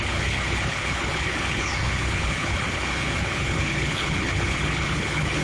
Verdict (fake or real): fake